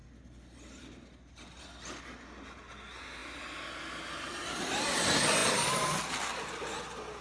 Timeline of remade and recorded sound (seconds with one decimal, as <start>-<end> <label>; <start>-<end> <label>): 0.0-7.2 recorded